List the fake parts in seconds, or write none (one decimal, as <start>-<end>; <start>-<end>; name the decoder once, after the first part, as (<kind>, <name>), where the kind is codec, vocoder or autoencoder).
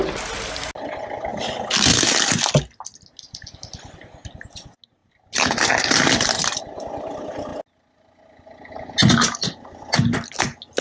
none